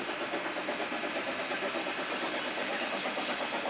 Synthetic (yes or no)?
no